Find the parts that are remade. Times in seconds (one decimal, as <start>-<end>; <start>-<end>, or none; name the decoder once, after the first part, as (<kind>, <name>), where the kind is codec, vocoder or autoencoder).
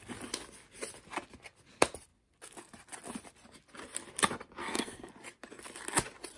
4.6-5.1 (codec, SNAC)